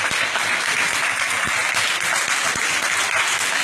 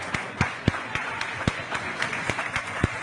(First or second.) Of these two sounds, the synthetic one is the second